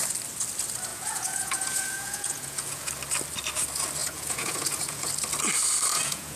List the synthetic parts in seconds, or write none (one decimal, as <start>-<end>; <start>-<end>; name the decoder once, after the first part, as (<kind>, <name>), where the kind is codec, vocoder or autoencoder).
0.9-2.9 (vocoder, Vocos); 4.0-5.1; 5.9-6.4